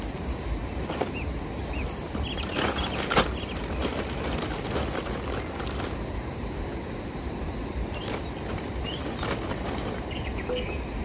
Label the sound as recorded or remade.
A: recorded